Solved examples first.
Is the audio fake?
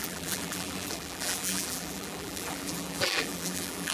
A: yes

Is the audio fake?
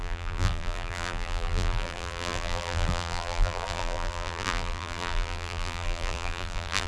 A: yes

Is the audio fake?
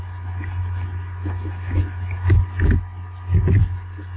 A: no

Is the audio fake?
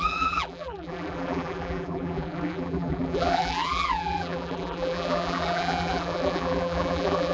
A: yes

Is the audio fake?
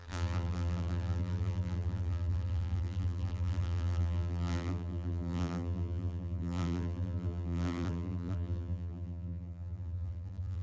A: yes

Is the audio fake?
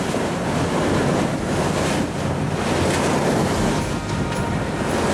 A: no